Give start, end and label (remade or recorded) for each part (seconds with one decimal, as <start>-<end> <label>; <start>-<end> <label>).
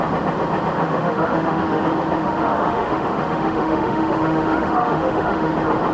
0.0-0.8 recorded; 0.8-1.8 remade; 1.8-2.2 recorded; 2.2-5.5 remade; 5.5-5.9 recorded